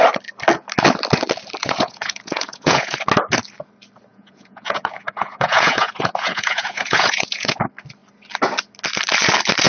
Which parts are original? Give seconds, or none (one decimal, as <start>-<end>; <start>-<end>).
0.0-1.6; 3.0-4.1; 7.6-9.7